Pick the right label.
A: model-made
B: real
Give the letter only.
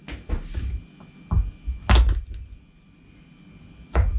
B